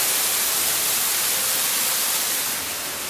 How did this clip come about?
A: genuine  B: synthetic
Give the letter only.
A